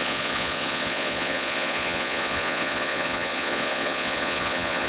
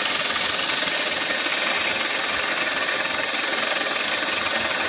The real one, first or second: second